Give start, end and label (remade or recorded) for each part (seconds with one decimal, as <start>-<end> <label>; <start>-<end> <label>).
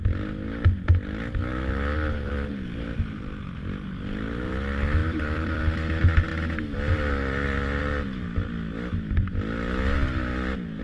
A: 0.0-1.5 recorded; 1.5-2.3 remade; 2.3-5.0 recorded; 5.0-5.6 remade; 5.6-10.8 recorded